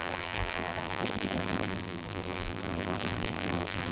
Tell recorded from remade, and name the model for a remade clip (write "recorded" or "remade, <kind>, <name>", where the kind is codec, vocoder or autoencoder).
remade, vocoder, BigVGAN v2